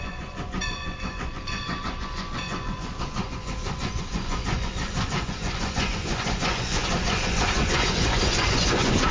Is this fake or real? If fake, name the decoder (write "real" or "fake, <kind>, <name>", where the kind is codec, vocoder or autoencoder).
fake, vocoder, Vocos